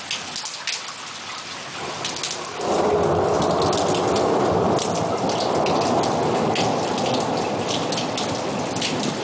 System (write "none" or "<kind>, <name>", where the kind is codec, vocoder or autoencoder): none